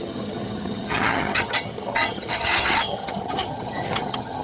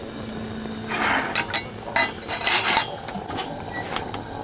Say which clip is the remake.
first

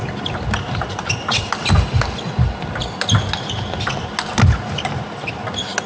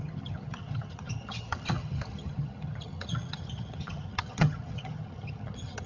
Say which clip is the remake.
second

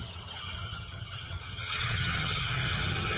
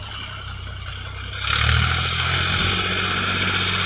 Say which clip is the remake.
first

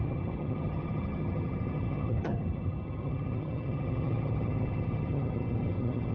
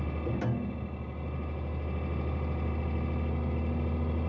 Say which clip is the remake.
first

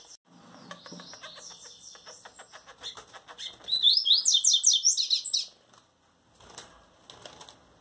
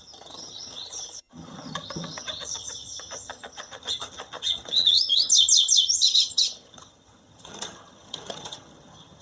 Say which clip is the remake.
second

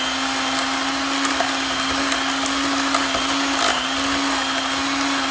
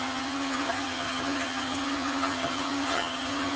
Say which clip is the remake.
second